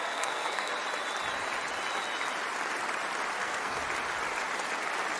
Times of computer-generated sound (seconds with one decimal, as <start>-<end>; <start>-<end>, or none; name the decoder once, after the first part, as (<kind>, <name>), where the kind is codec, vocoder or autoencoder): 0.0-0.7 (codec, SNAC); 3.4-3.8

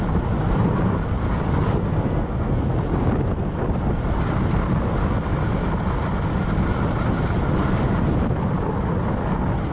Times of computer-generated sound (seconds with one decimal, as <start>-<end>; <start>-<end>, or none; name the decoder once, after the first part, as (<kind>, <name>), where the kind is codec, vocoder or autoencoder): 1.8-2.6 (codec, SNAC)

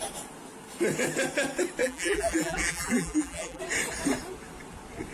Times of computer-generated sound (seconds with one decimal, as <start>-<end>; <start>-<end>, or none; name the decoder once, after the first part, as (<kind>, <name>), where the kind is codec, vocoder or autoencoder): 1.8-3.6 (vocoder, BigVGAN v2)

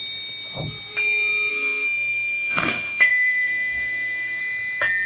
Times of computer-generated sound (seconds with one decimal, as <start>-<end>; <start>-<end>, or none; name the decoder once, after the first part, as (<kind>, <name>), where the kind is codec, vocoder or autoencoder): 1.5-4.4 (codec, SNAC)

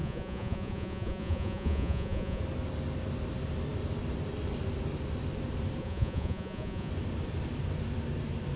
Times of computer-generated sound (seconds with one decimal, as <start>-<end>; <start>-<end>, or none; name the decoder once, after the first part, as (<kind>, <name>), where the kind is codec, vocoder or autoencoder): 0.0-2.4 (vocoder, Vocos); 5.8-6.9

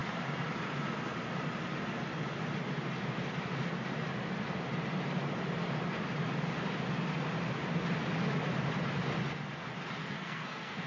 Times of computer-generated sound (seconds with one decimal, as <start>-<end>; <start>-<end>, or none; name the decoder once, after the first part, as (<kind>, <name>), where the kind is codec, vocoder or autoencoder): 10.0-10.9 (codec, SNAC)

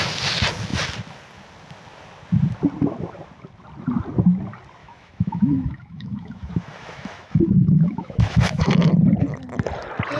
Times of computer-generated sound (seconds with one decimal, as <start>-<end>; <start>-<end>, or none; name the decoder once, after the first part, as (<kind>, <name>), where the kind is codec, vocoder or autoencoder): 4.8-8.9 (autoencoder, DAC-VAE)

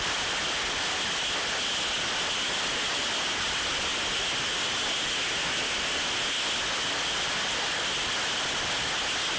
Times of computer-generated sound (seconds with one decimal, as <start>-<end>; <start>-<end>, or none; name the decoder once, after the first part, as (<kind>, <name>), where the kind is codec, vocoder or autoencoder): none